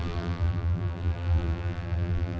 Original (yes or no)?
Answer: no